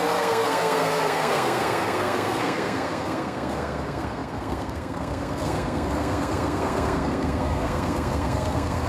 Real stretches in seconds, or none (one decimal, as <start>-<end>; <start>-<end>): none